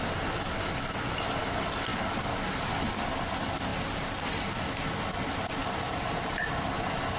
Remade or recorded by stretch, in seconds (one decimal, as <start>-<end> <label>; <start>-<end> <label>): 0.0-1.9 recorded; 1.9-2.7 remade; 2.7-3.7 recorded; 3.7-4.7 remade; 4.7-5.6 recorded; 5.6-6.7 remade; 6.7-7.2 recorded